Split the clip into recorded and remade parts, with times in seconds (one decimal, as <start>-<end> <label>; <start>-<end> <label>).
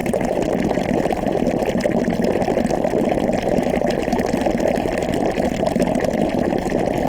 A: 0.0-7.1 recorded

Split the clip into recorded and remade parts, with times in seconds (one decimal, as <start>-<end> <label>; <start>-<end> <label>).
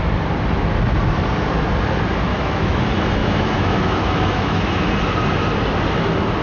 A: 0.0-2.3 recorded; 2.3-2.8 remade; 2.8-3.2 recorded; 3.2-4.9 remade; 4.9-6.4 recorded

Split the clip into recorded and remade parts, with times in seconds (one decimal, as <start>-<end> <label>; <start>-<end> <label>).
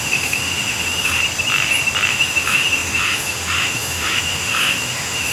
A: 0.0-1.2 remade; 1.2-2.1 recorded; 2.1-5.3 remade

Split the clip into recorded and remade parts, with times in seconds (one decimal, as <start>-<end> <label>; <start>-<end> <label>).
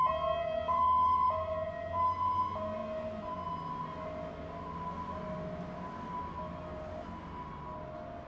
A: 0.0-8.3 recorded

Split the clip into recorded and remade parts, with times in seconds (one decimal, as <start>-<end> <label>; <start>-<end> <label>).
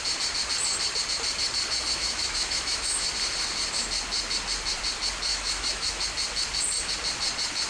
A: 0.0-2.0 recorded; 2.0-3.1 remade; 3.1-5.3 recorded; 5.3-6.0 remade; 6.0-7.7 recorded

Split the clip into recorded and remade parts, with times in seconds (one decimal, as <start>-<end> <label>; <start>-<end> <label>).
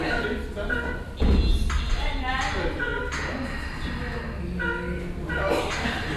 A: 0.0-6.2 recorded